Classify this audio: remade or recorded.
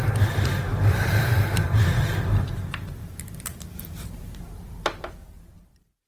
remade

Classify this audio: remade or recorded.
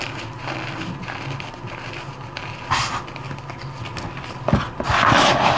recorded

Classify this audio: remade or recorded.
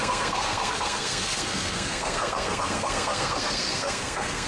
remade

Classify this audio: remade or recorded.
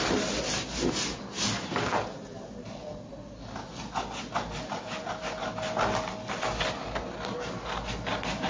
recorded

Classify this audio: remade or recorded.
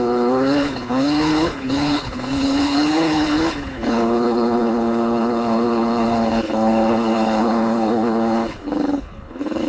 remade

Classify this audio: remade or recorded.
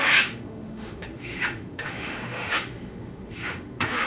remade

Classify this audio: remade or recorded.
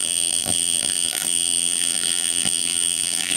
remade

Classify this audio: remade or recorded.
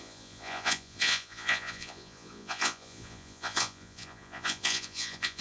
remade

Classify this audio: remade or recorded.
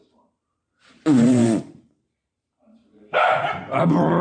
remade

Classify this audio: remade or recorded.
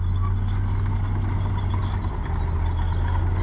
recorded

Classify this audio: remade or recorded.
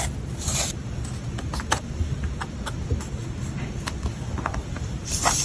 recorded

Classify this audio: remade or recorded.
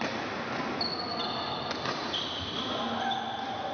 recorded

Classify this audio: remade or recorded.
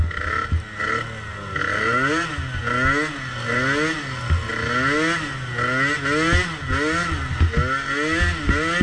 recorded